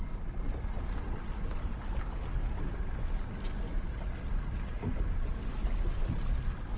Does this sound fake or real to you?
real